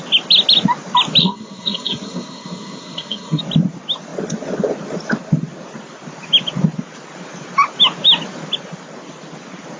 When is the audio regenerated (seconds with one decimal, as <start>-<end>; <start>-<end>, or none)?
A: 1.2-3.4